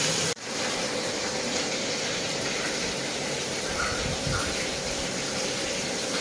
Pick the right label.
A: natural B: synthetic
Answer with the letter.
B